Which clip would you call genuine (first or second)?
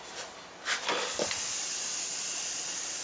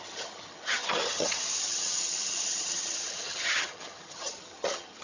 first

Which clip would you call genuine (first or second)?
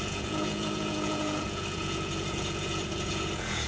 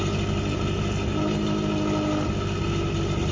second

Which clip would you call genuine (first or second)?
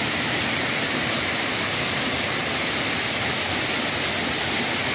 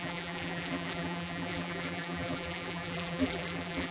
first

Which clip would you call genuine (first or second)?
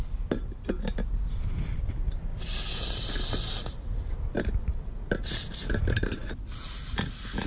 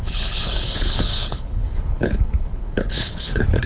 first